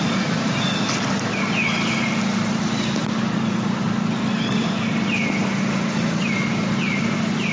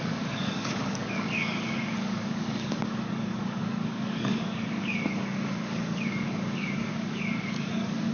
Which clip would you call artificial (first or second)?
second